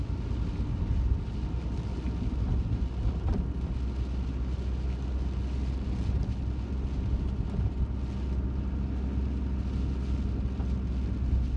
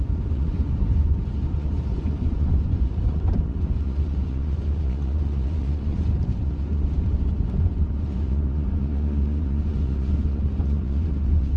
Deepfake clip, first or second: second